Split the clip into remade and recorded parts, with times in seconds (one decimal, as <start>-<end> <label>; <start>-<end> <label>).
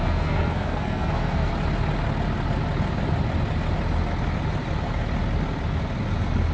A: 0.0-1.5 remade; 1.5-6.5 recorded